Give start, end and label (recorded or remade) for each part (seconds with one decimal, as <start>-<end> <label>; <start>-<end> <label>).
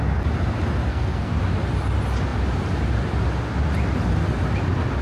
0.0-0.9 recorded; 0.9-1.4 remade; 1.4-5.0 recorded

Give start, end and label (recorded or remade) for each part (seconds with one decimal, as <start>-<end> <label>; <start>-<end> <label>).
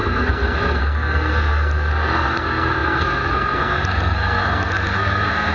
0.0-5.5 remade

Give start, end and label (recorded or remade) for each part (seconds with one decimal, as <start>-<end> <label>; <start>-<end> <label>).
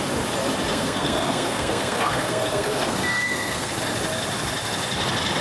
0.0-0.7 recorded; 0.7-3.7 remade; 3.7-5.4 recorded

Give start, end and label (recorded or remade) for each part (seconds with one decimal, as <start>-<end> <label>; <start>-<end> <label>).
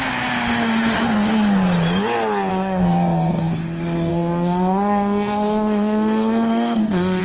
0.0-2.5 recorded; 2.5-3.5 remade; 3.5-4.1 recorded; 4.1-7.2 remade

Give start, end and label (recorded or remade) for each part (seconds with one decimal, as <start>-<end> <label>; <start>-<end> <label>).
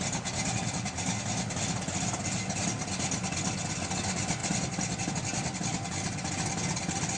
0.0-7.2 recorded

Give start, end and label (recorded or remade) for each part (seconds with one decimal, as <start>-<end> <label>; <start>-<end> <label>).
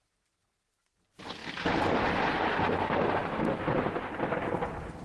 0.0-5.0 recorded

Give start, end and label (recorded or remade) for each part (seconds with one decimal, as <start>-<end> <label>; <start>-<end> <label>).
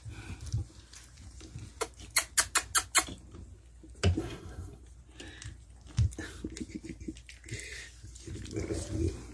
0.0-4.2 recorded; 4.2-4.8 remade; 4.8-9.3 recorded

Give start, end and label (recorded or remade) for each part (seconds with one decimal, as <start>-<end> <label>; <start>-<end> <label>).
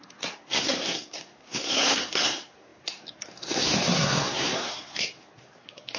0.0-6.0 remade